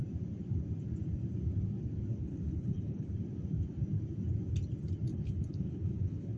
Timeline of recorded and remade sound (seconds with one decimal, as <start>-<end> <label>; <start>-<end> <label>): 0.0-2.1 recorded; 2.1-3.1 remade; 3.1-5.1 recorded; 5.1-6.4 remade